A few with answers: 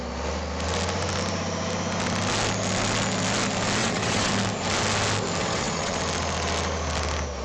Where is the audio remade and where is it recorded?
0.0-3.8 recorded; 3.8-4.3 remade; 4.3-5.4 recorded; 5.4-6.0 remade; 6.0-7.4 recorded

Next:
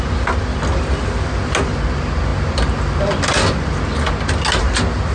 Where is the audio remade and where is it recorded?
0.0-5.1 recorded

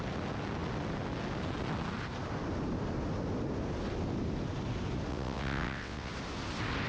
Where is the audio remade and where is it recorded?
0.0-5.1 recorded; 5.1-6.1 remade; 6.1-6.9 recorded